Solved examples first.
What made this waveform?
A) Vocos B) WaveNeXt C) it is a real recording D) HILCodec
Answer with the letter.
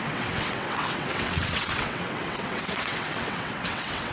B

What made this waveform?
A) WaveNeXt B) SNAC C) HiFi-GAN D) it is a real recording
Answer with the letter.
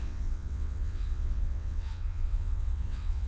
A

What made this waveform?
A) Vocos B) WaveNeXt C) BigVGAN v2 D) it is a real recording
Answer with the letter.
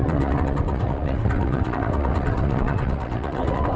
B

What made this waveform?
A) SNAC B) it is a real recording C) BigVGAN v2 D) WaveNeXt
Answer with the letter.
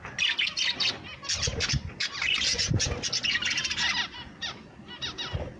B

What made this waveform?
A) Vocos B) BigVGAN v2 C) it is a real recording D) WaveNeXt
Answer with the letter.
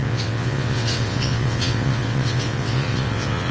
D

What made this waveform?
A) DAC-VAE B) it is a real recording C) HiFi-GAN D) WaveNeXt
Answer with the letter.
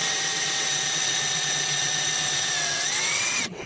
D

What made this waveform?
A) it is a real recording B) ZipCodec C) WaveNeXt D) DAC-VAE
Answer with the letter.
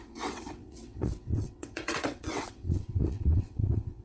C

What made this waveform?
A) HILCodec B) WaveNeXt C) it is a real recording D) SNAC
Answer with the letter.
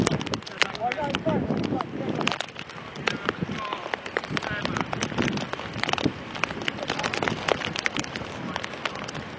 C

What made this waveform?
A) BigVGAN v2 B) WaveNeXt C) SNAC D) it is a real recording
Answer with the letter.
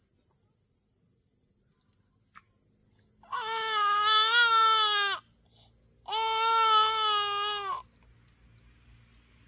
D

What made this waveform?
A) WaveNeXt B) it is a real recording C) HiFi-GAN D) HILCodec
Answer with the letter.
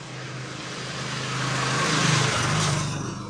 B